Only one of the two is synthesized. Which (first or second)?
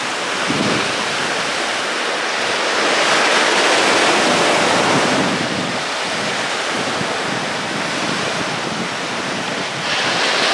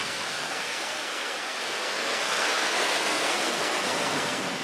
second